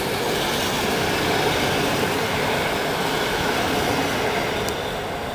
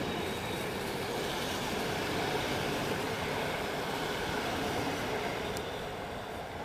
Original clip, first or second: first